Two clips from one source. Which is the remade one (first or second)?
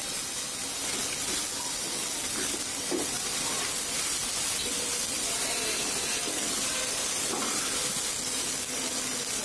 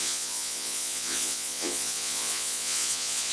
second